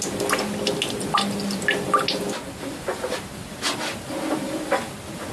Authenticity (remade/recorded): recorded